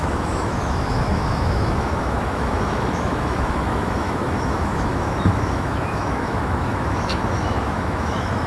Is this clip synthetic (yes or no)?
yes